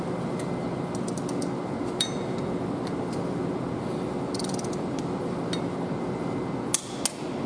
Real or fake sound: real